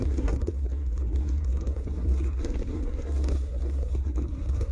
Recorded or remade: remade